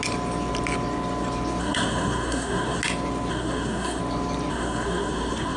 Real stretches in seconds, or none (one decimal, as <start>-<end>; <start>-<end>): 0.0-1.6; 2.8-3.3; 4.0-4.5